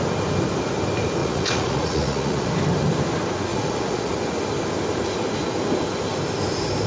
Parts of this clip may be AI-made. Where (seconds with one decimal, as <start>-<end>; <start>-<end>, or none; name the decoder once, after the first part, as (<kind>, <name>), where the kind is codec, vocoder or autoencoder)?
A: 1.2-2.5 (vocoder, Vocos); 3.5-4.1